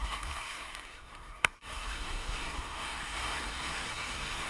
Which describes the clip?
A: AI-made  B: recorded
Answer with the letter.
A